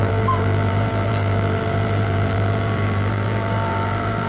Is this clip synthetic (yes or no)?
yes